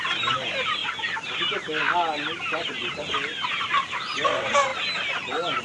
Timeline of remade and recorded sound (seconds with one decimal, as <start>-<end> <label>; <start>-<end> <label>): 0.0-5.6 recorded